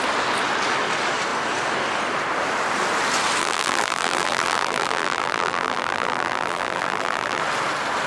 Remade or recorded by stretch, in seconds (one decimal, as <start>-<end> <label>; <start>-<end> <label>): 0.0-3.4 recorded; 3.4-7.4 remade; 7.4-8.1 recorded